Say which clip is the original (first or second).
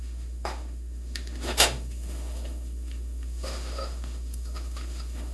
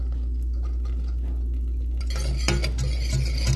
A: second